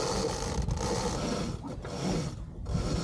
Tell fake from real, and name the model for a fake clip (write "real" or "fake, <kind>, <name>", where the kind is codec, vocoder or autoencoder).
real